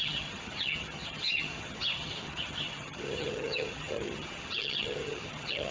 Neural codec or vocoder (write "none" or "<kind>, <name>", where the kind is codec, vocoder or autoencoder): vocoder, HiFi-GAN